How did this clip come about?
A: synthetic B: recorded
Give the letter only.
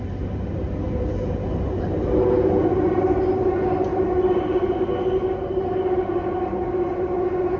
B